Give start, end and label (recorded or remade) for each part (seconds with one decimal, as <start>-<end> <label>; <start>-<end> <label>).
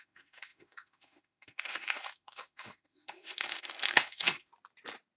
0.0-4.5 remade; 4.5-5.2 recorded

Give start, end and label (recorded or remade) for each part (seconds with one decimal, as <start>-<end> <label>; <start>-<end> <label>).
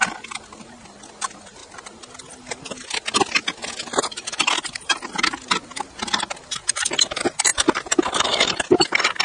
0.0-9.2 recorded